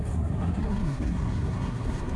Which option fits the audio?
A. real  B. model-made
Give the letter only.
B